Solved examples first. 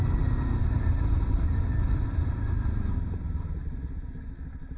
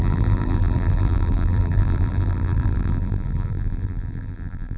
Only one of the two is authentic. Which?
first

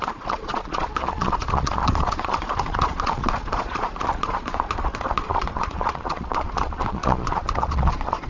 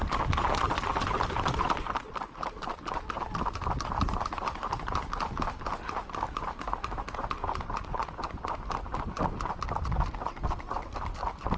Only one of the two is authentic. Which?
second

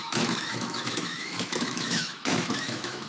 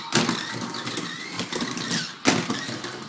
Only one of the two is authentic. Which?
second